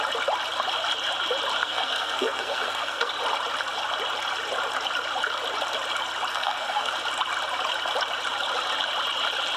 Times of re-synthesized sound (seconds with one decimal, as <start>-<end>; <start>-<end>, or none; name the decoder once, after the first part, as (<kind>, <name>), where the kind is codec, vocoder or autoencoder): 1.6-3.1 (codec, SNAC); 6.3-6.9